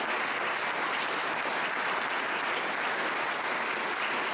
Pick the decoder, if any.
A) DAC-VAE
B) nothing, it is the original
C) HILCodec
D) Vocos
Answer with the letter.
B